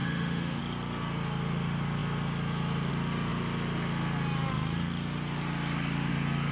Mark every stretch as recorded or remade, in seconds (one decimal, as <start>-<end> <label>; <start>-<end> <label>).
0.0-0.6 remade; 0.6-6.5 recorded